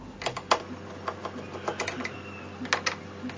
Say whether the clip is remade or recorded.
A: recorded